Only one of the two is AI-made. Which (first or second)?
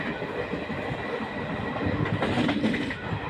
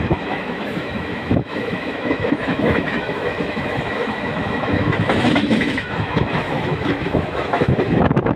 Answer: second